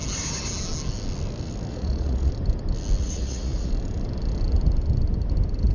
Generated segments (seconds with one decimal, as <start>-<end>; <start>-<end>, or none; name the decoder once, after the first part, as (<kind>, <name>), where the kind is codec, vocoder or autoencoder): 1.7-2.3 (vocoder, Vocos); 3.0-3.7